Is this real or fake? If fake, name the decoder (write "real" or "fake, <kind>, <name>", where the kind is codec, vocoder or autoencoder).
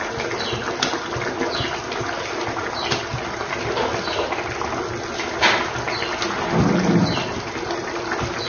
real